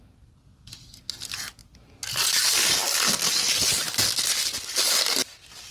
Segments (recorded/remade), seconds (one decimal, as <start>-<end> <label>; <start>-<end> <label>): 0.0-5.7 recorded